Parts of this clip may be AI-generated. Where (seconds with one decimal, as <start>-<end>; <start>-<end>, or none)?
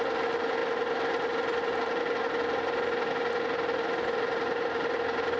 none